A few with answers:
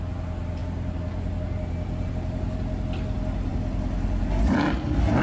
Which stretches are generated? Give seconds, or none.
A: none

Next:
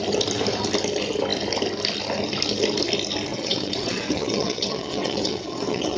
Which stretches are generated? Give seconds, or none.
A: 3.3-6.0 (vocoder, WaveNeXt)

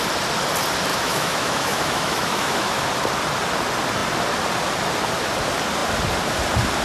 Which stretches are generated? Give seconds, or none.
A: 0.9-2.8 (autoencoder, DAC-VAE)

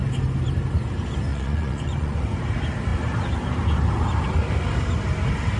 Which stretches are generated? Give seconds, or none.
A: 1.3-2.2 (vocoder, Vocos)

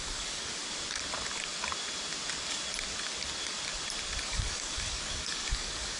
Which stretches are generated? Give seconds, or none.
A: 0.0-0.6 (codec, DAC); 4.2-6.0